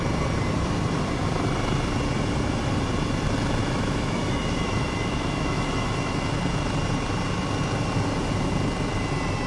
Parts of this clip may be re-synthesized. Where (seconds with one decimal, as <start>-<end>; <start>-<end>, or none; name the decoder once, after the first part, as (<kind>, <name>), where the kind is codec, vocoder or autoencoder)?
3.6-6.2 (autoencoder, DAC-VAE)